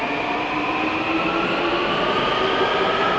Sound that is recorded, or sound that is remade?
recorded